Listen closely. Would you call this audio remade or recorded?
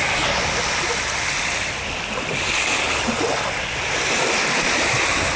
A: recorded